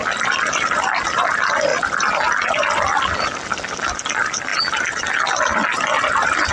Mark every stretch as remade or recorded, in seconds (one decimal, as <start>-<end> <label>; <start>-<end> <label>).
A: 0.0-1.7 remade; 1.7-4.0 recorded; 4.0-4.5 remade; 4.5-6.5 recorded